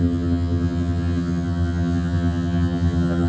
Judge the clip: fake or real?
fake